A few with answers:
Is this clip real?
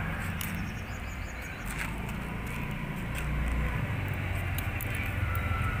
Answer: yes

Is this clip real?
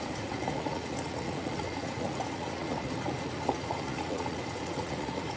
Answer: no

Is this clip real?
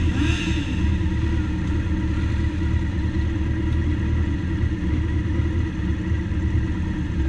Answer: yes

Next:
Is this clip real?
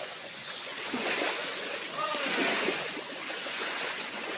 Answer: no